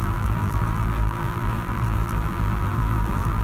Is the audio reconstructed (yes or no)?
yes